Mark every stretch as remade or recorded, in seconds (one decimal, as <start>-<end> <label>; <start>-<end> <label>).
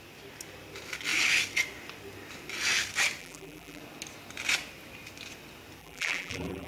0.0-3.2 recorded; 3.2-3.8 remade; 3.8-5.8 recorded; 5.8-6.7 remade